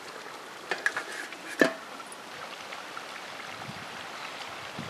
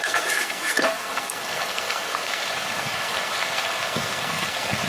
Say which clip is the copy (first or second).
second